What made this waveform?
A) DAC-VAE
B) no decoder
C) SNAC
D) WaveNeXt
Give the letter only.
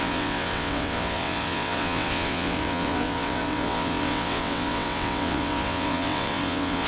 D